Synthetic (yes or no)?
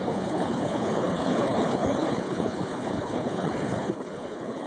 yes